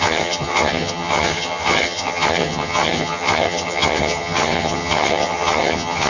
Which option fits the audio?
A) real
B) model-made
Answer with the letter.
B